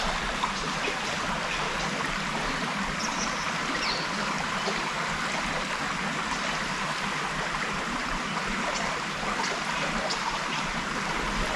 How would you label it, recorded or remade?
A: recorded